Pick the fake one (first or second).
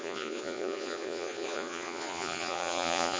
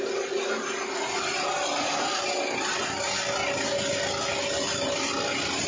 first